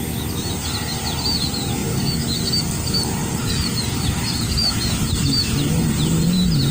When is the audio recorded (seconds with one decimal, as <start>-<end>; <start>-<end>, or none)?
0.0-3.2; 4.7-6.7